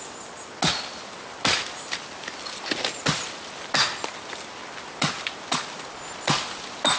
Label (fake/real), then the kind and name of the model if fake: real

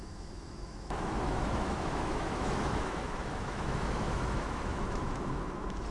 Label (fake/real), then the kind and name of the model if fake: fake, autoencoder, DAC-VAE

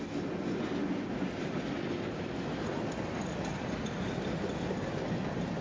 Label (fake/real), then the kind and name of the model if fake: real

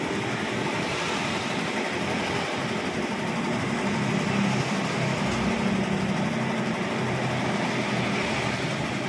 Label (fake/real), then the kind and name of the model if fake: real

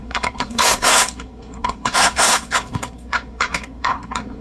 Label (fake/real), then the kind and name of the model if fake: fake, codec, SNAC